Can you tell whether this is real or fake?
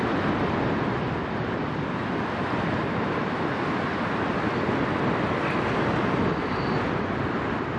real